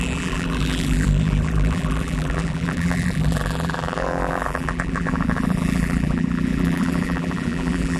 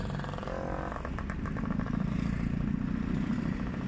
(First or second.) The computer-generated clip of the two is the first